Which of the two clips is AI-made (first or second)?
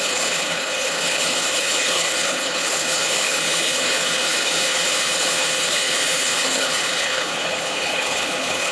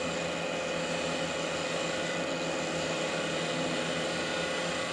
first